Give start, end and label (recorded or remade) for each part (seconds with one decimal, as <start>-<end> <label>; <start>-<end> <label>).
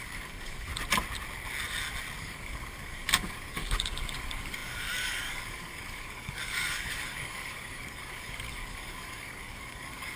0.0-0.7 remade; 0.7-2.2 recorded; 2.2-10.2 remade